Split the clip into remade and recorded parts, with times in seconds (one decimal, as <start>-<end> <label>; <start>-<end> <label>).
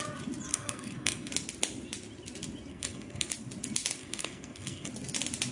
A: 0.0-0.5 recorded; 0.5-1.3 remade; 1.3-2.7 recorded; 2.7-3.3 remade; 3.3-4.0 recorded; 4.0-4.9 remade; 4.9-5.5 recorded